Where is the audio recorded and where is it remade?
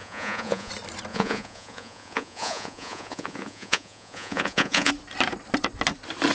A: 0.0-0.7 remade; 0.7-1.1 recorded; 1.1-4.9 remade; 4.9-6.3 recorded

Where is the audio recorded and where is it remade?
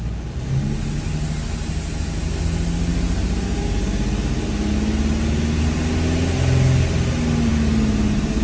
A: 0.0-8.4 recorded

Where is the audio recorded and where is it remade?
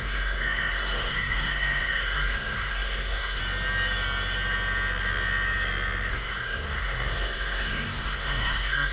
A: 0.0-3.4 remade; 3.4-6.1 recorded; 6.1-8.9 remade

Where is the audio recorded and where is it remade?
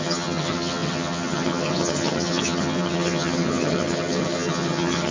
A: 0.0-5.1 remade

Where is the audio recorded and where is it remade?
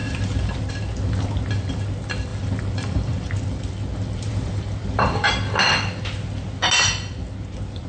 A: 0.0-0.7 remade; 0.7-2.3 recorded; 2.3-5.3 remade; 5.3-7.9 recorded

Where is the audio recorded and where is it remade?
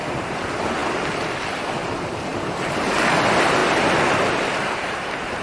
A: 0.0-5.4 recorded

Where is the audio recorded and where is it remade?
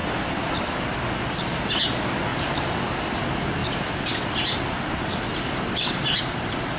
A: 0.0-2.3 recorded; 2.3-3.2 remade; 3.2-3.6 recorded; 3.6-6.2 remade; 6.2-6.8 recorded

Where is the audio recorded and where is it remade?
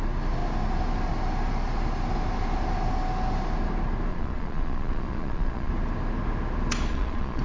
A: 0.0-4.1 recorded; 4.1-5.7 remade; 5.7-6.9 recorded; 6.9-7.4 remade